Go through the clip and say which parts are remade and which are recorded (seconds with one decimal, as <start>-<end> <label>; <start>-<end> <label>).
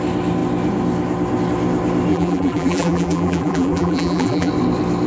0.0-2.1 recorded; 2.1-4.5 remade; 4.5-5.1 recorded